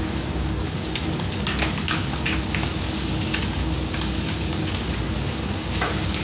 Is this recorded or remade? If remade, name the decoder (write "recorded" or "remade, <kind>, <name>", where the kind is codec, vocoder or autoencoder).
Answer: remade, codec, DAC